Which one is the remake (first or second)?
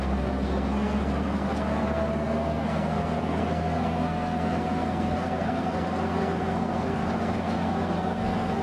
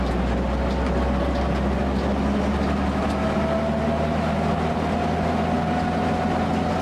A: first